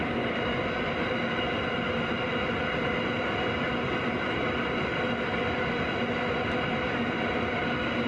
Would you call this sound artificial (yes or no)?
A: no